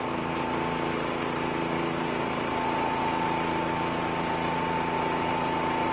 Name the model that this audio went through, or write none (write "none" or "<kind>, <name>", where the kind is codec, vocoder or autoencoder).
none